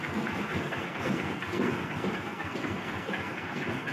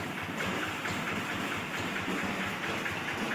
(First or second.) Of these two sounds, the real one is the second